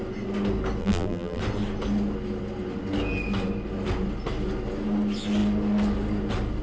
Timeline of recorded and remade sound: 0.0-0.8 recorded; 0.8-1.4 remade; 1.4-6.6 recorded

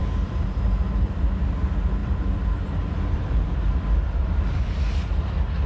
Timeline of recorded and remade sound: 0.0-1.4 remade; 1.4-2.0 recorded; 2.0-4.9 remade; 4.9-5.7 recorded

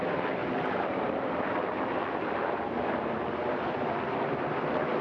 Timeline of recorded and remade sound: 0.0-5.0 remade

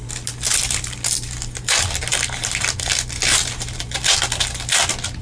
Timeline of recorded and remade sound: 0.0-5.2 recorded

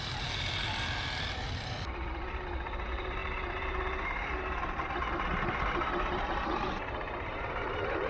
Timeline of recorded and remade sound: 0.0-8.1 recorded

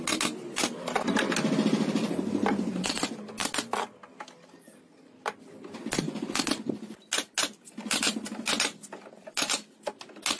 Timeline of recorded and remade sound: 0.0-10.4 recorded